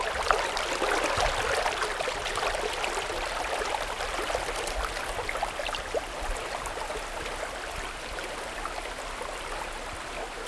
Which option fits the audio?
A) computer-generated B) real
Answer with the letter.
B